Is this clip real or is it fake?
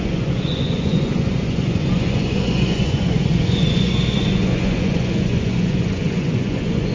fake